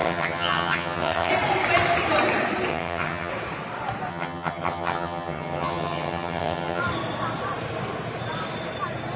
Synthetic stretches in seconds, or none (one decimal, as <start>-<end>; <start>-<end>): 0.0-1.3; 2.7-3.3; 4.1-6.8